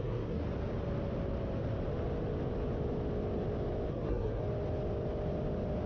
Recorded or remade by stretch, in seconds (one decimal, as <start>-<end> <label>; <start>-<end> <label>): 0.0-0.4 remade; 0.4-3.9 recorded; 3.9-4.4 remade; 4.4-5.9 recorded